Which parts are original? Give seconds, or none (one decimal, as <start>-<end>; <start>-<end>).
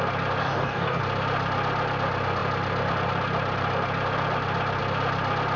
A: 0.0-0.4; 1.0-5.6